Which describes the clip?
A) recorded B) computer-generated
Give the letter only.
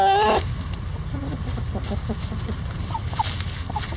A